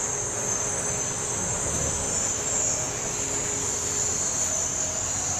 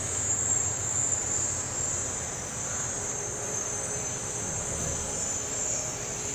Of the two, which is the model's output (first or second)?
second